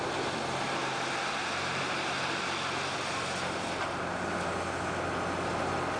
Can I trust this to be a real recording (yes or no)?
yes